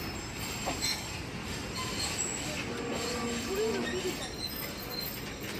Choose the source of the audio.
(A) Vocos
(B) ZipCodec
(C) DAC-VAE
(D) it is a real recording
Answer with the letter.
D